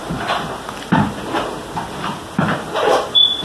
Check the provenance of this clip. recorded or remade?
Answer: recorded